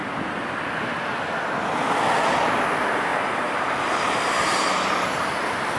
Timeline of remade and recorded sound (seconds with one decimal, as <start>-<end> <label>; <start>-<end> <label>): 0.0-3.1 recorded; 3.1-4.5 remade; 4.5-5.8 recorded